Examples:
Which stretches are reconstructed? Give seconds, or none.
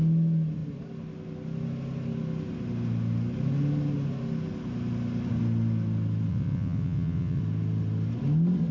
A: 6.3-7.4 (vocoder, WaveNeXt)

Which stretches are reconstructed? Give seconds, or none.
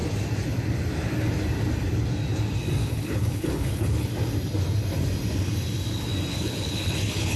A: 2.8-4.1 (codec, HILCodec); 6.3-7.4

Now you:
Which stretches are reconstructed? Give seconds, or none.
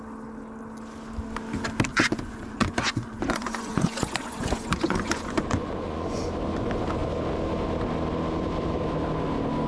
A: 1.9-6.2 (vocoder, Vocos)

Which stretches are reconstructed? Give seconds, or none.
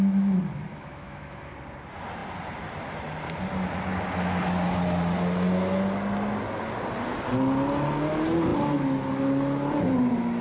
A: 0.7-1.5 (autoencoder, DAC-VAE)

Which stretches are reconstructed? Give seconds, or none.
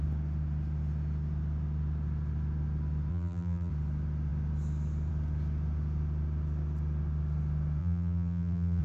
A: 3.1-3.7 (vocoder, BigVGAN v2); 7.8-8.8